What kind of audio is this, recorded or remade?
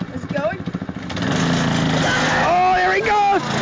recorded